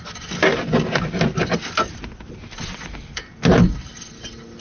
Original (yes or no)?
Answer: yes